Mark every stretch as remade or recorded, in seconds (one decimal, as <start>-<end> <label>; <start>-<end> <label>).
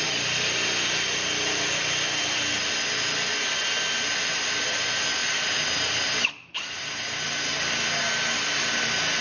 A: 0.0-9.2 recorded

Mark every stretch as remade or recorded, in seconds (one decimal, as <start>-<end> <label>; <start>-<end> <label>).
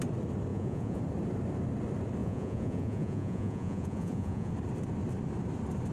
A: 0.0-0.5 recorded; 0.5-1.0 remade; 1.0-2.2 recorded; 2.2-4.5 remade; 4.5-5.9 recorded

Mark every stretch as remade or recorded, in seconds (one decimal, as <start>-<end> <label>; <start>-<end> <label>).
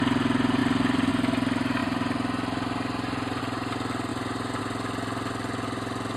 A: 0.0-0.6 recorded; 0.6-1.1 remade; 1.1-1.8 recorded; 1.8-3.4 remade; 3.4-4.1 recorded; 4.1-4.6 remade; 4.6-6.2 recorded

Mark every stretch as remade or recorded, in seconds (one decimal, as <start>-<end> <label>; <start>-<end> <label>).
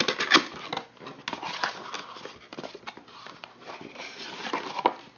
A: 0.0-2.5 recorded; 2.5-4.5 remade; 4.5-5.2 recorded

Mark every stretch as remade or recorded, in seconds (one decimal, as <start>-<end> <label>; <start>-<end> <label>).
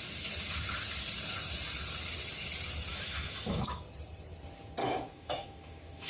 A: 0.0-2.9 recorded; 2.9-3.8 remade; 3.8-4.8 recorded; 4.8-6.1 remade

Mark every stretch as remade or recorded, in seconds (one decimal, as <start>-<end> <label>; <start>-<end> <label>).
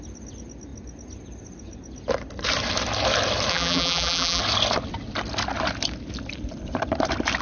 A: 0.0-3.5 recorded; 3.5-4.4 remade; 4.4-7.4 recorded